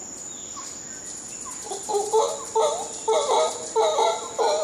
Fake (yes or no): no